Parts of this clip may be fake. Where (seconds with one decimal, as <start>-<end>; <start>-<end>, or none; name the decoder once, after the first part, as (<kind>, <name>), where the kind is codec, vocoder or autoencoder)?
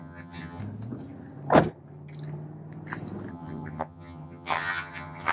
0.0-0.6 (vocoder, HiFi-GAN); 3.3-5.3